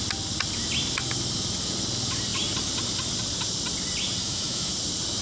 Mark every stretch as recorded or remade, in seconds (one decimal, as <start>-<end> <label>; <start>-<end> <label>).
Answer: 0.0-4.2 recorded; 4.2-4.7 remade; 4.7-5.2 recorded

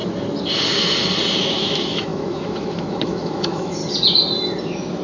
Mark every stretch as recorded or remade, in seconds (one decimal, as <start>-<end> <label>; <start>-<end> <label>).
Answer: 0.0-1.4 recorded; 1.4-3.8 remade; 3.8-4.6 recorded; 4.6-5.0 remade

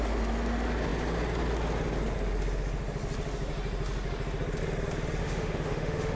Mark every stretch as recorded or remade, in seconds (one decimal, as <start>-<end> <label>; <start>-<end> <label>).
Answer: 0.0-5.2 recorded; 5.2-6.2 remade

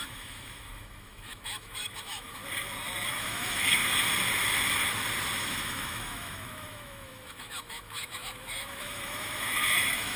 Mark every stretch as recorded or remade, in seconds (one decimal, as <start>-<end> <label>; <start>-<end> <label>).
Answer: 0.0-2.4 remade; 2.4-3.1 recorded; 3.1-3.8 remade; 3.8-5.4 recorded; 5.4-10.2 remade

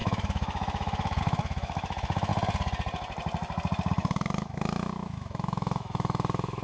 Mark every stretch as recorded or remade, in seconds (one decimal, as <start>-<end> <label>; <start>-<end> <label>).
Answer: 0.0-2.3 remade; 2.3-3.9 recorded; 3.9-6.6 remade

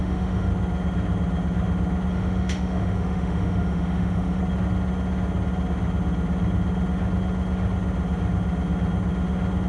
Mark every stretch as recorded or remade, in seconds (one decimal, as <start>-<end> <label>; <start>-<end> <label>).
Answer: 0.0-0.5 remade; 0.5-2.1 recorded; 2.1-4.4 remade; 4.4-9.7 recorded

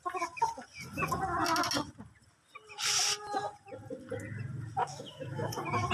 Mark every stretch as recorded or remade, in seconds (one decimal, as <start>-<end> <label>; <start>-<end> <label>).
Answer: 0.0-4.8 recorded; 4.8-5.5 remade; 5.5-5.9 recorded

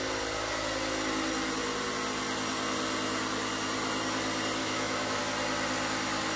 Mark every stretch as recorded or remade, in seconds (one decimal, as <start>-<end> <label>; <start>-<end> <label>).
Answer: 0.0-4.6 recorded; 4.6-5.2 remade; 5.2-6.4 recorded